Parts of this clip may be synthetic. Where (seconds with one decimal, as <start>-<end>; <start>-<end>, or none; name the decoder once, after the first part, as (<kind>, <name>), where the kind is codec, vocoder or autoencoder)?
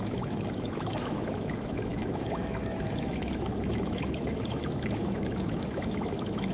0.0-6.5 (autoencoder, DAC-VAE)